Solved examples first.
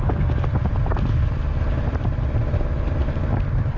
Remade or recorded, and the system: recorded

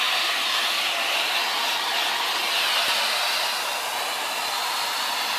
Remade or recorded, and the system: recorded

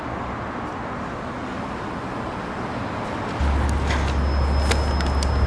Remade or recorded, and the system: recorded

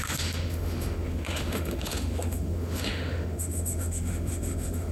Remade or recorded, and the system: remade, autoencoder, DAC-VAE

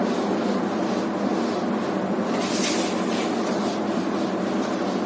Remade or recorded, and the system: recorded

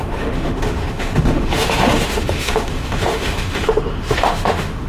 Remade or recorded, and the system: remade, autoencoder, DAC-VAE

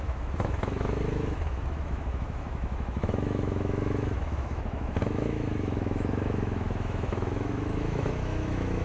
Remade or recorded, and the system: remade, autoencoder, DAC-VAE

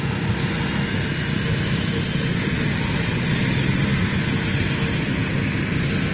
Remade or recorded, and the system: recorded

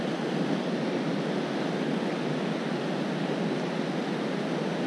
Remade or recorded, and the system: recorded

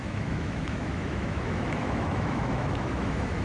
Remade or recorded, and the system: remade, autoencoder, DAC-VAE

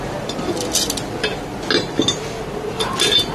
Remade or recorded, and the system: recorded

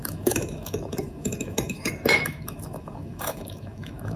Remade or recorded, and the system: remade, autoencoder, DAC-VAE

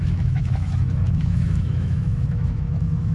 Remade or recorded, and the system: remade, autoencoder, DAC-VAE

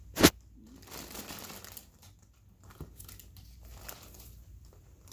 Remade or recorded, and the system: recorded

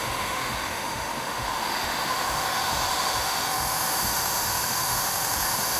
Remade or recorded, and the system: remade, autoencoder, DAC-VAE